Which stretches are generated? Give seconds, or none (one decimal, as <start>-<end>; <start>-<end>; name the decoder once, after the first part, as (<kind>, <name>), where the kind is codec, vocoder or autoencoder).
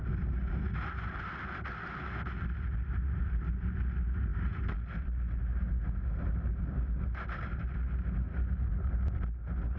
none